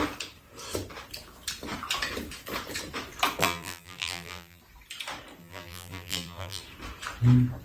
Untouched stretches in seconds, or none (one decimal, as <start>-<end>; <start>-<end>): 0.0-3.4; 4.6-5.4; 6.6-7.6